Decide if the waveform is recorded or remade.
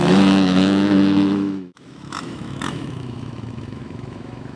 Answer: remade